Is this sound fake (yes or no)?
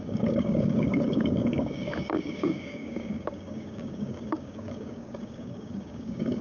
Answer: yes